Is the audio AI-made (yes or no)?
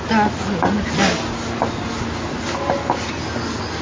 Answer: no